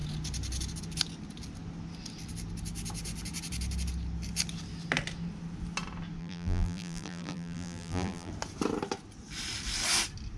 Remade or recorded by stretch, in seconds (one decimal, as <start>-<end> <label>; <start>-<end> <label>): 0.0-6.2 recorded; 6.2-8.3 remade; 8.3-10.4 recorded